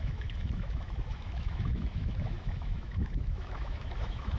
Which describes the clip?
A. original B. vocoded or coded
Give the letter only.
B